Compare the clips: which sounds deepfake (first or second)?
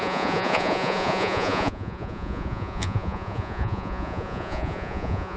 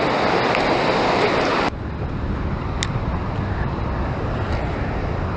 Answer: first